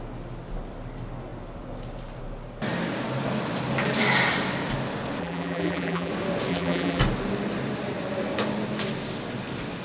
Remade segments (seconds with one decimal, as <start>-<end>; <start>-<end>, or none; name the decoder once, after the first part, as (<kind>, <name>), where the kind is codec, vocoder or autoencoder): 5.2-6.1 (vocoder, BigVGAN v2); 6.5-7.0